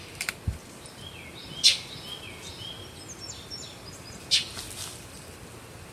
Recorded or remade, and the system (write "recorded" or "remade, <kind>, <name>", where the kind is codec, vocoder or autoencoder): recorded